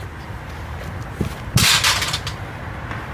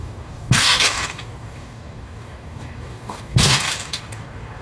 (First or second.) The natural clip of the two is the first